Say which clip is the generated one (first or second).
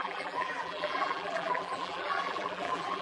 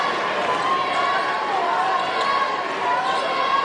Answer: first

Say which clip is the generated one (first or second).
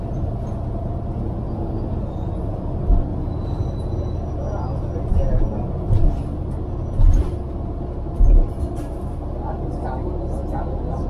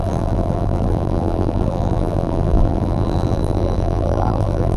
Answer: second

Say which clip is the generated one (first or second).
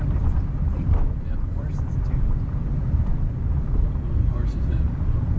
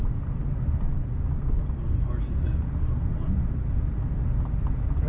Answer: first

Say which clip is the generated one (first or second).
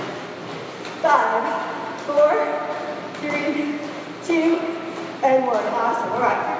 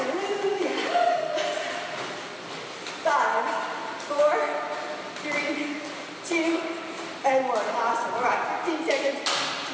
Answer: second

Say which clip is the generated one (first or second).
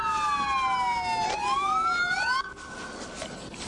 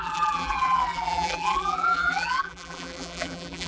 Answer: second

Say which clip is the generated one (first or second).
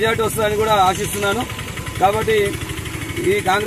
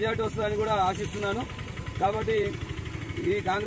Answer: second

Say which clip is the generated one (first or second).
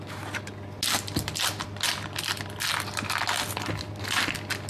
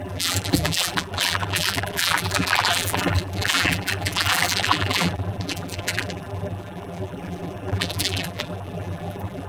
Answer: second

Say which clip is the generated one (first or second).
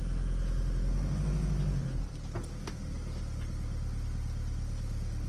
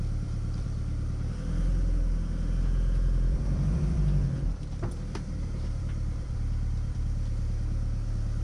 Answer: second